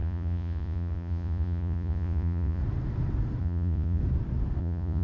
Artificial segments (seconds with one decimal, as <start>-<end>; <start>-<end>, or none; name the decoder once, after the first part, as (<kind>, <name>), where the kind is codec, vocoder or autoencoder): 0.0-2.6 (vocoder, Vocos); 3.4-4.0; 4.6-5.0